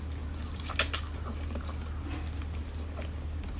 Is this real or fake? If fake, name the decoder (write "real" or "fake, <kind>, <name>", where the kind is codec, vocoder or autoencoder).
real